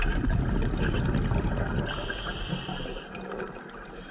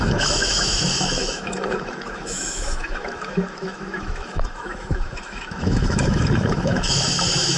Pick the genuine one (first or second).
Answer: first